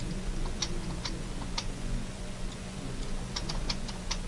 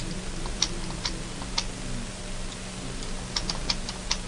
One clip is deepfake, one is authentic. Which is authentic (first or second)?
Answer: second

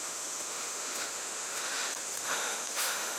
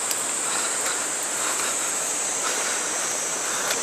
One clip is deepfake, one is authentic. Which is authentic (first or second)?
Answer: second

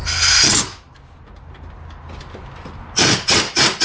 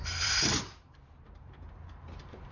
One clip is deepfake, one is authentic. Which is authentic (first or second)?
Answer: first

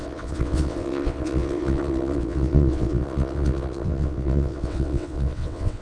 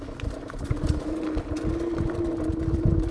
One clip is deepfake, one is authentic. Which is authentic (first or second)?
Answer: second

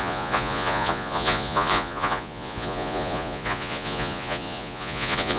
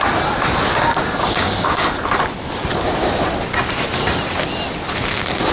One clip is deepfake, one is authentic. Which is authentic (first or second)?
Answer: second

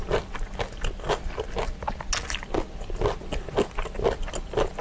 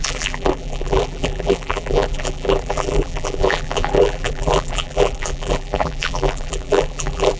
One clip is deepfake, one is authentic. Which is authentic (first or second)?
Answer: first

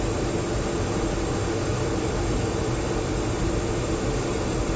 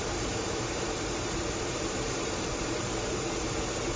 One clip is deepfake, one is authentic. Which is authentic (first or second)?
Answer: first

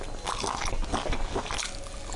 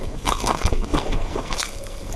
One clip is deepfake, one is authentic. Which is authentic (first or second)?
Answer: first